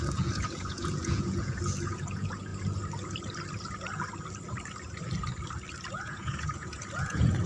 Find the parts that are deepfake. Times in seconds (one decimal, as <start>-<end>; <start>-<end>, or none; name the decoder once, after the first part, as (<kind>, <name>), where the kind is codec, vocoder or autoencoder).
0.0-2.5 (vocoder, Vocos); 5.9-7.5

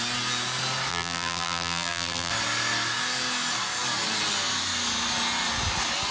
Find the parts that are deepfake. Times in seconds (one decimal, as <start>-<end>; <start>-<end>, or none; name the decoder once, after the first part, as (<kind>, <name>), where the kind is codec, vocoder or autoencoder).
0.9-2.3 (vocoder, BigVGAN v2)

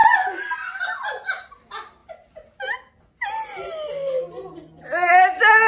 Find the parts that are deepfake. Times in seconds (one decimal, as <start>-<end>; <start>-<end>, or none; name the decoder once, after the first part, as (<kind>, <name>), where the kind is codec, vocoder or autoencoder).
none

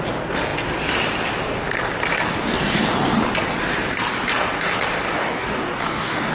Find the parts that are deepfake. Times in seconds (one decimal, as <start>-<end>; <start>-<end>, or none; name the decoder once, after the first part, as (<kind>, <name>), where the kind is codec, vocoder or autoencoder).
5.2-6.3 (codec, DAC)

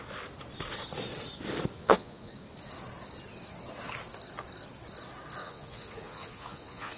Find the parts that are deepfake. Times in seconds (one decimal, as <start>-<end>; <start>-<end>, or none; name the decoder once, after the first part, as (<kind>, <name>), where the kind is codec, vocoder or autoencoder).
1.8-2.3 (vocoder, Vocos); 5.4-7.0